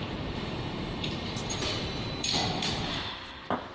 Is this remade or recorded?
remade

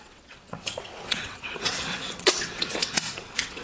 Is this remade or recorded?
remade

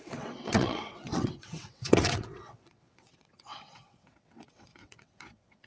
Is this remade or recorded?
remade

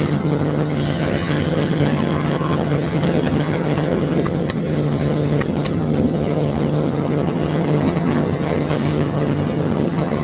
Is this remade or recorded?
remade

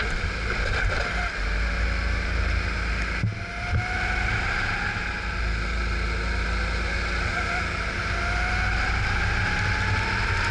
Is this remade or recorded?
recorded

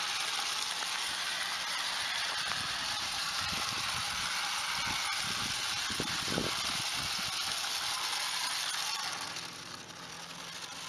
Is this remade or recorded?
recorded